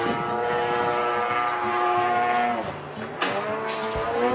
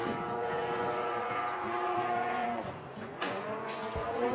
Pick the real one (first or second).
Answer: first